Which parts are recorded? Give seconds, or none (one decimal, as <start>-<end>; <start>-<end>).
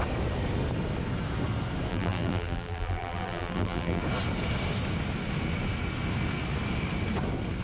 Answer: 0.0-1.9; 4.0-7.6